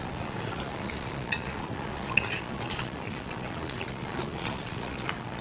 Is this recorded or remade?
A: remade